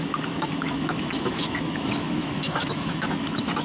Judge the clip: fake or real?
fake